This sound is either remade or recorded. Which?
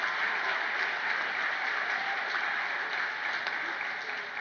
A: recorded